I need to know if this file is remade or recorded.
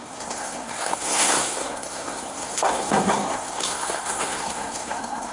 remade